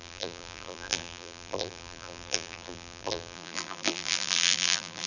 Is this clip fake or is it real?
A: fake